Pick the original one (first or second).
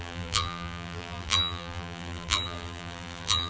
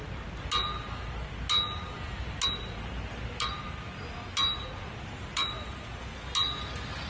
second